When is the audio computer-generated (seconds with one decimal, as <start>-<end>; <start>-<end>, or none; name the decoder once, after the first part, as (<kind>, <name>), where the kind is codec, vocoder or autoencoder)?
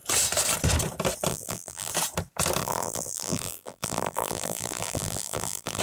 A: 1.3-1.9 (vocoder, BigVGAN v2); 2.6-5.8